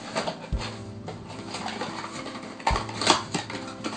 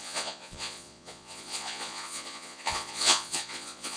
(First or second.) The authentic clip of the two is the first